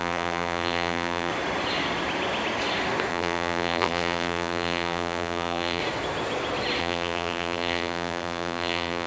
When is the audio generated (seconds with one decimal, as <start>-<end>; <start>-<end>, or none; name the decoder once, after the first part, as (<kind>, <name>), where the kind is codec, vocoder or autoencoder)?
0.0-1.3 (vocoder, BigVGAN v2); 3.1-5.8; 6.8-9.1